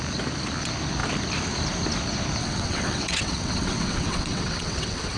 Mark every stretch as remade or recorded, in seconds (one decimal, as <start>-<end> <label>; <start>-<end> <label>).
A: 0.0-2.4 recorded; 2.4-5.2 remade